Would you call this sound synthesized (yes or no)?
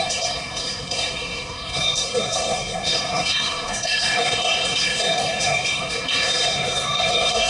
yes